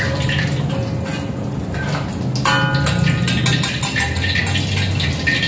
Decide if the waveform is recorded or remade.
recorded